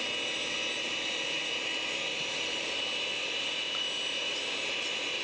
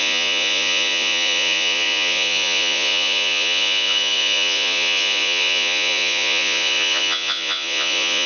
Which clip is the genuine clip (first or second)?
first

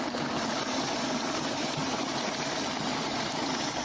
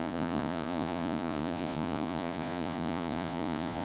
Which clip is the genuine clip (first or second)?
first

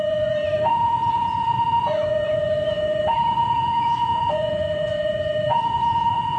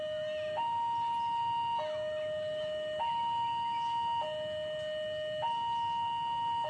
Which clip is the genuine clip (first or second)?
second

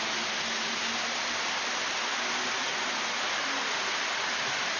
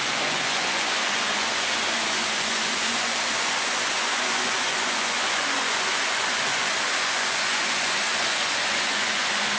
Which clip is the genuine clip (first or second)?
first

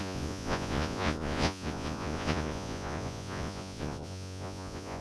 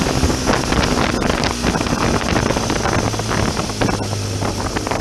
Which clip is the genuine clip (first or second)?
second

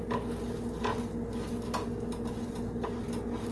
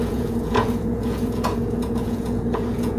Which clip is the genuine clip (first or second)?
first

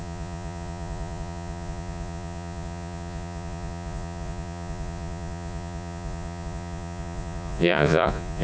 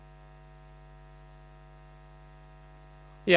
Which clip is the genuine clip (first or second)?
second